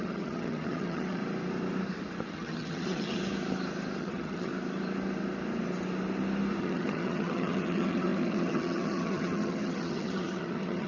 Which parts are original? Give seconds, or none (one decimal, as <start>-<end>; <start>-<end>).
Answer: 1.2-2.3; 3.2-4.0; 4.5-6.6